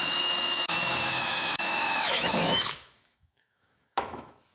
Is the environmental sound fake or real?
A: fake